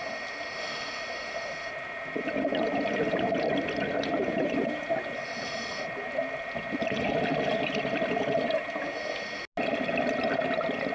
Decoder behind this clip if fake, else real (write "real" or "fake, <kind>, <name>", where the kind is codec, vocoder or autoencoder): real